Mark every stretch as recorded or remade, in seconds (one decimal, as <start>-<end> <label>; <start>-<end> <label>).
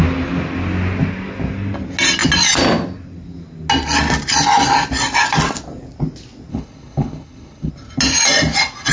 0.0-6.5 recorded; 6.5-7.7 remade; 7.7-8.9 recorded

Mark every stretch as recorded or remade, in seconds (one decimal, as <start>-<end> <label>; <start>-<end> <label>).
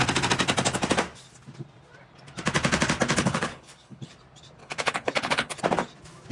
0.0-3.2 recorded; 3.2-4.1 remade; 4.1-4.6 recorded; 4.6-5.6 remade; 5.6-6.3 recorded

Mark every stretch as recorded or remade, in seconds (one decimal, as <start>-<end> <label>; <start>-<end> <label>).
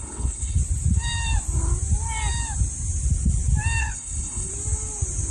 0.0-0.6 remade; 0.6-3.8 recorded; 3.8-4.5 remade; 4.5-5.3 recorded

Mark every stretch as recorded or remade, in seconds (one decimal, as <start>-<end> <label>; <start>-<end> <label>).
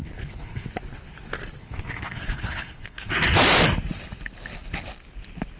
0.0-0.7 remade; 0.7-1.6 recorded; 1.6-3.1 remade; 3.1-5.6 recorded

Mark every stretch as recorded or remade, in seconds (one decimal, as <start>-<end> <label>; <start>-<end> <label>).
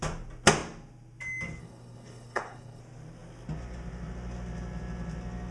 0.0-1.6 recorded; 1.6-2.8 remade; 2.8-5.5 recorded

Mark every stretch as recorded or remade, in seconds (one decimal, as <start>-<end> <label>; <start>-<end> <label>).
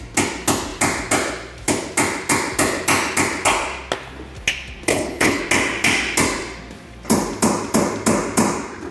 0.0-4.9 recorded; 4.9-5.4 remade; 5.4-8.9 recorded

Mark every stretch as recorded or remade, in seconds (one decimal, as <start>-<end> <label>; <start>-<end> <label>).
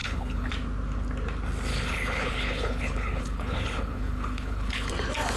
0.0-0.5 remade; 0.5-1.7 recorded; 1.7-4.9 remade; 4.9-5.4 recorded